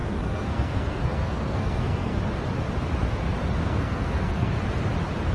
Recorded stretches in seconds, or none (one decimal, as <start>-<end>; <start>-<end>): 2.2-3.6; 4.5-5.3